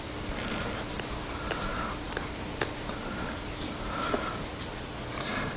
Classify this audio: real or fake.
fake